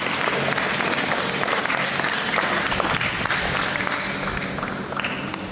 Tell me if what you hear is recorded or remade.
recorded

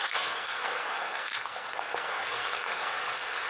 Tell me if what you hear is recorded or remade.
remade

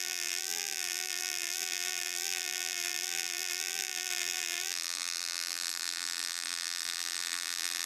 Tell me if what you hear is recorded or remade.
remade